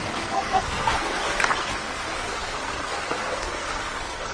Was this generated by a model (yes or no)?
yes